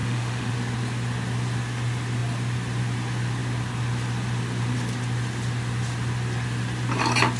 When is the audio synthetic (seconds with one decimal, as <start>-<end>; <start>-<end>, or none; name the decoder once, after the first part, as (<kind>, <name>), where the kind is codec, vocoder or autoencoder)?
0.0-0.5 (autoencoder, DAC-VAE)

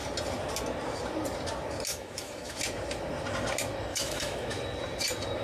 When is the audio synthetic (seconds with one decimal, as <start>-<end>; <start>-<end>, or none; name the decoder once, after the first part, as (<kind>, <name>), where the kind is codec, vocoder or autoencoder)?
1.9-2.6 (autoencoder, DAC-VAE); 3.9-4.6

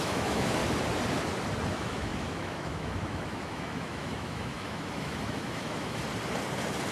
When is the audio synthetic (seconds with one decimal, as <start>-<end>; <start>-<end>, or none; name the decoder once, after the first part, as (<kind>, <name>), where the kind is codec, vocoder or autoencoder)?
0.0-0.6 (autoencoder, DAC-VAE); 1.7-6.0

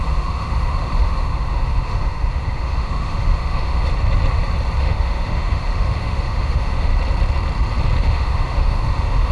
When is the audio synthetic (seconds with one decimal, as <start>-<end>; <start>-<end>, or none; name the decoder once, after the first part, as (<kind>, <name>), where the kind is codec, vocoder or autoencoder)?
0.0-3.9 (autoencoder, DAC-VAE); 4.8-6.9; 8.0-9.3

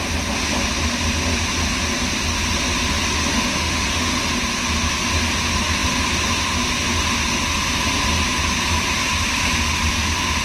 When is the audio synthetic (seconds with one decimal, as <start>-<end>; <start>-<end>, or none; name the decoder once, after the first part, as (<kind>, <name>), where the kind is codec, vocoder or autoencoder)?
3.3-4.2 (autoencoder, DAC-VAE)

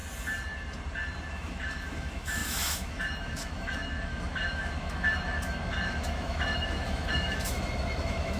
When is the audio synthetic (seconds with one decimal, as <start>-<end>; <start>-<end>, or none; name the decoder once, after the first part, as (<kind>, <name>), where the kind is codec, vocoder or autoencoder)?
1.3-8.4 (autoencoder, DAC-VAE)

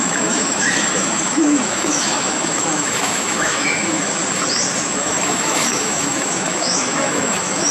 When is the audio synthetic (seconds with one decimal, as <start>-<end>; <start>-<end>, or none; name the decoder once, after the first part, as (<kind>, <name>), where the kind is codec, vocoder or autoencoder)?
0.0-4.2 (autoencoder, DAC-VAE); 4.8-7.7